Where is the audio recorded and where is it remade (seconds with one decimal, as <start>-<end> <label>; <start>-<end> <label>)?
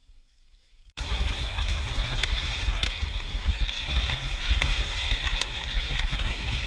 0.0-6.7 remade